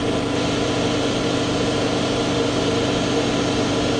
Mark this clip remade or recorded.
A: recorded